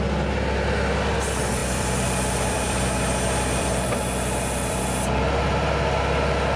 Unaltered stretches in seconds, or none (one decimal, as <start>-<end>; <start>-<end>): 0.0-1.6; 4.8-6.6